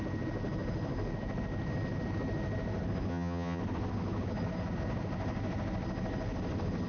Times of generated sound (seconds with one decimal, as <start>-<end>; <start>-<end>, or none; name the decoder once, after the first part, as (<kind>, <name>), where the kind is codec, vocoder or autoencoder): 3.1-3.6 (vocoder, HiFi-GAN)